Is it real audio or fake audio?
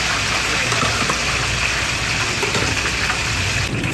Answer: real